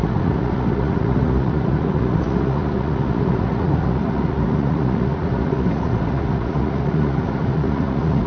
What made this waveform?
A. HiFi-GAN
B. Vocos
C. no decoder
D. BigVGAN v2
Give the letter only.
B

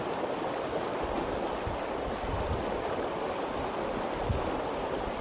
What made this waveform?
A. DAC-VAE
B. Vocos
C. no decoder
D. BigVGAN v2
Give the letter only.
C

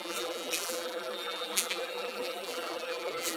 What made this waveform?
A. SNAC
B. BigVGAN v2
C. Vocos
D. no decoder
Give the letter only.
B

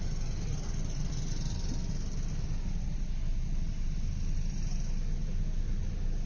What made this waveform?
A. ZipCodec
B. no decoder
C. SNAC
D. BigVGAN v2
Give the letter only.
B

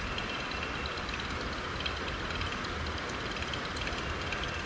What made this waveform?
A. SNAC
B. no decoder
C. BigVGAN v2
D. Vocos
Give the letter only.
B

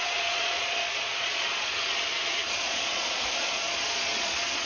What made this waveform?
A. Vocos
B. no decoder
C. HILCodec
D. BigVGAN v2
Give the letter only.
A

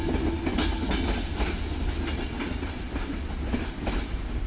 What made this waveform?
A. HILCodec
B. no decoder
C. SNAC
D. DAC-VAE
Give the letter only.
B